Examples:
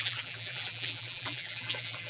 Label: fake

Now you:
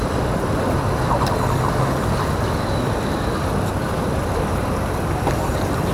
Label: real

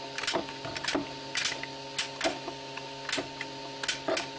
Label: real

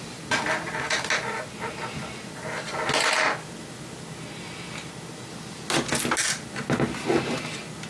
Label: real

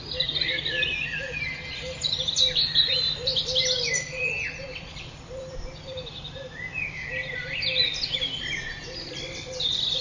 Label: fake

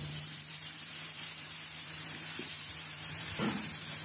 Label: fake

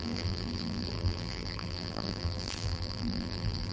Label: fake